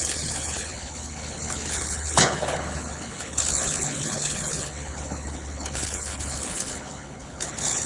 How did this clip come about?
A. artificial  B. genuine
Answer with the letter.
A